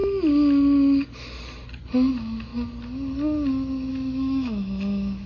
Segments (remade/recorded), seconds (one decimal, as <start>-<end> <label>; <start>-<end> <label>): 0.0-2.1 recorded; 2.1-2.5 remade; 2.5-3.9 recorded; 3.9-5.3 remade